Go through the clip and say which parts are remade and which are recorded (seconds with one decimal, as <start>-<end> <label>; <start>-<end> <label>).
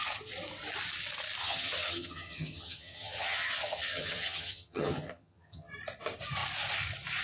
0.0-1.4 recorded; 1.4-5.7 remade; 5.7-7.2 recorded